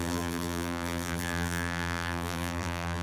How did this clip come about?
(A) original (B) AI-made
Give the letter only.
B